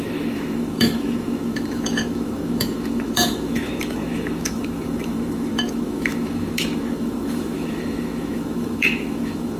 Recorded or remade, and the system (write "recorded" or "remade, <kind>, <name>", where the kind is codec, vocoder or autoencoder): remade, autoencoder, DAC-VAE